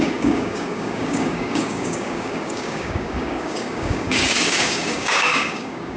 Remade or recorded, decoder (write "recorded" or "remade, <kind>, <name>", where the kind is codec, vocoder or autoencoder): remade, codec, DAC